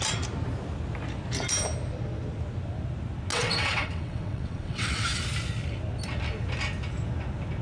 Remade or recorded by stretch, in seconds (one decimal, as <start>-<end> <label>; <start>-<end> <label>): 0.0-3.3 recorded; 3.3-5.2 remade; 5.2-7.6 recorded